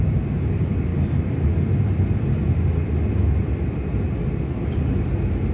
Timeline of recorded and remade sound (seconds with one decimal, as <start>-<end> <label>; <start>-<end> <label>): 0.0-5.5 recorded